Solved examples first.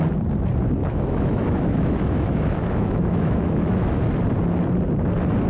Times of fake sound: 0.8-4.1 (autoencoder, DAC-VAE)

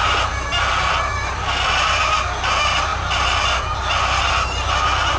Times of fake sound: none

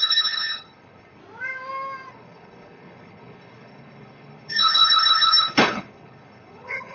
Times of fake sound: 0.0-1.2 (codec, HILCodec); 2.1-6.9

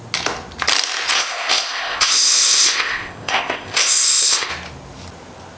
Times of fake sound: 1.1-4.5 (codec, ZipCodec)

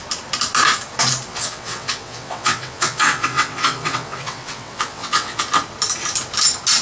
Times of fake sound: 1.3-5.4 (vocoder, WaveNeXt)

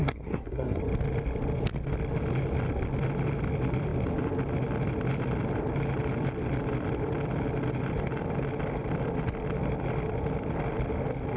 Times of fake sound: 0.0-0.8 (codec, SNAC)

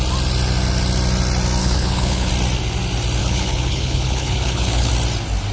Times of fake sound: 1.6-2.3 (codec, HILCodec); 3.2-4.9

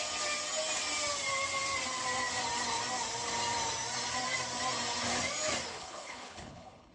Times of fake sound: 5.7-6.9 (codec, HILCodec)